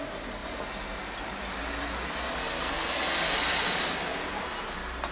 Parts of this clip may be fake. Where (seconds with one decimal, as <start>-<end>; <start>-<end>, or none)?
2.4-2.9